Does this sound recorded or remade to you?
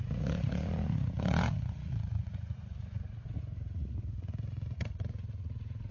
remade